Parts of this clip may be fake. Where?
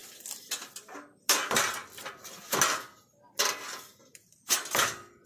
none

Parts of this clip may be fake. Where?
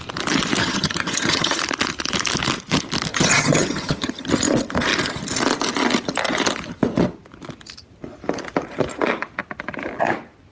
0.6-1.6; 3.1-4.3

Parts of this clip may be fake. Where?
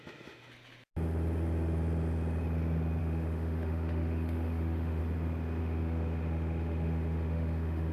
0.0-0.5; 3.0-5.0; 5.6-7.9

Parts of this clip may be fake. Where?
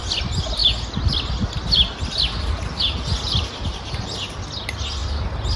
none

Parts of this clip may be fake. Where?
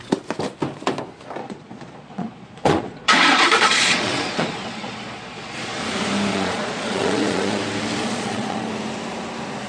1.4-5.8; 6.3-7.6; 8.0-8.7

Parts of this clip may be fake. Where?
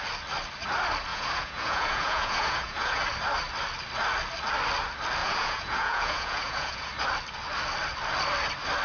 1.1-3.0; 5.2-6.9